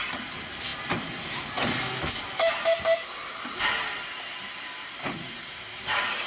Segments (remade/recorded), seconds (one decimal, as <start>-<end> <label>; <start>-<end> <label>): 0.0-6.3 recorded